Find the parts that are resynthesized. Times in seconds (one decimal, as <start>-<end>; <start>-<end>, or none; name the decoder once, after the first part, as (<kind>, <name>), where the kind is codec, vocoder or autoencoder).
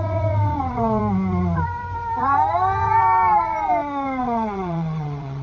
0.0-1.0 (vocoder, WaveNeXt); 4.2-5.4